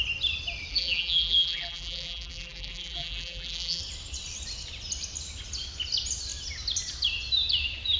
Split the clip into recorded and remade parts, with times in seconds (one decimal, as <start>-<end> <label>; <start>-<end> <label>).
0.0-0.7 recorded; 0.7-3.8 remade; 3.8-8.0 recorded